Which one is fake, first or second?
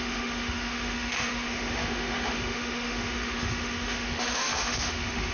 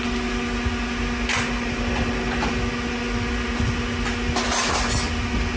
first